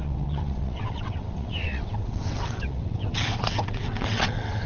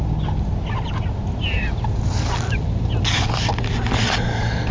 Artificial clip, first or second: first